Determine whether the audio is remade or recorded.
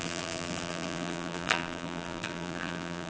remade